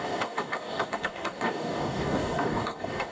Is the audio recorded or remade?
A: remade